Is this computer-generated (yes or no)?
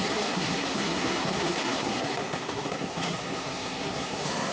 yes